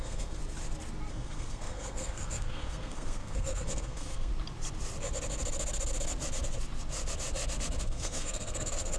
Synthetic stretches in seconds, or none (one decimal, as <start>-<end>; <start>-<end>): 0.0-0.4; 1.1-4.3; 7.8-9.0